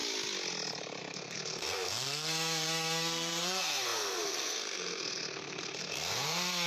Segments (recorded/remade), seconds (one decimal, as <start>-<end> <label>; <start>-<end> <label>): 0.0-1.0 recorded; 1.0-6.7 remade